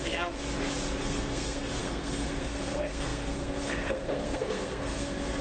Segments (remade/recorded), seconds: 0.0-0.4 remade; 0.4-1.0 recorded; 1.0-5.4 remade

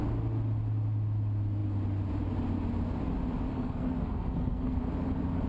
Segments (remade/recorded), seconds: 0.0-3.5 recorded; 3.5-4.8 remade; 4.8-5.5 recorded